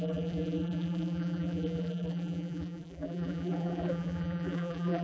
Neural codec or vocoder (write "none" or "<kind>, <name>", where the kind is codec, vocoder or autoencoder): vocoder, BigVGAN v2